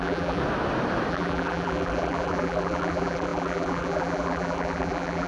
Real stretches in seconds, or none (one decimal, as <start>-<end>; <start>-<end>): 0.4-1.1

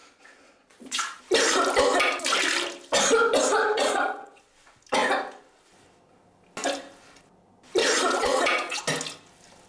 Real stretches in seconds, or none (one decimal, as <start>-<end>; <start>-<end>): 1.2-3.6; 4.4-7.8; 8.8-9.7

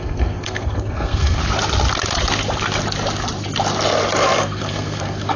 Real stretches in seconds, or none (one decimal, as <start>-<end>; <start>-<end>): 1.4-4.4

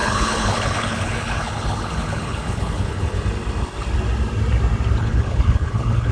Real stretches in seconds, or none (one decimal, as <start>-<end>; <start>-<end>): 3.2-5.0

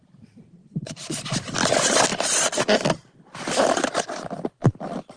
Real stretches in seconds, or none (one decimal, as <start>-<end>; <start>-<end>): 0.0-0.6; 1.2-5.2

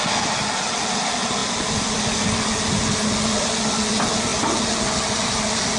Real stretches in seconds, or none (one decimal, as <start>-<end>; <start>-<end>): 0.0-5.8

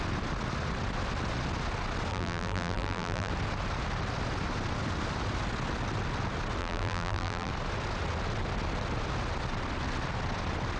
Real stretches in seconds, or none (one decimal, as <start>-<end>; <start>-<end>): 0.0-2.1; 3.3-6.6; 7.5-10.8